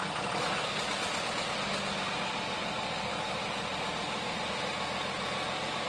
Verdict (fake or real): real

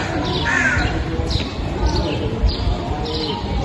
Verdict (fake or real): real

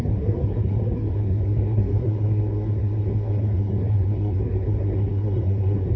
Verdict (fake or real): fake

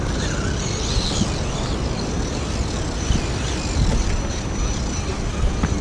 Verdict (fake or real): real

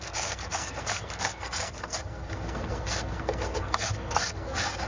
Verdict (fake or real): fake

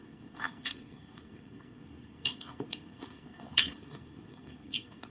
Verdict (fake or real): fake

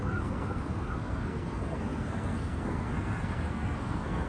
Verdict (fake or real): fake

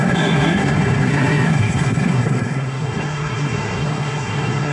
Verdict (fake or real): fake